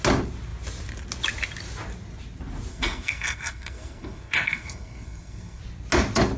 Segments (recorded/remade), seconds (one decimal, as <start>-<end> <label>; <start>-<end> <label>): 0.0-2.7 recorded; 2.7-5.6 remade; 5.6-6.4 recorded